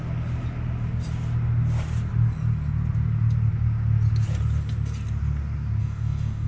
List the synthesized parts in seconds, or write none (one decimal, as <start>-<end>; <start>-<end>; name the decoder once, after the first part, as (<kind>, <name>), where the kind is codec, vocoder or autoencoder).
5.8-6.5 (codec, DAC)